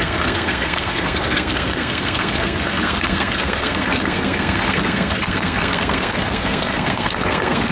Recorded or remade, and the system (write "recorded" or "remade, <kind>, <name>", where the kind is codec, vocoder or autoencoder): remade, codec, SNAC